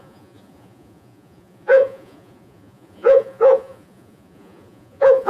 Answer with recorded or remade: remade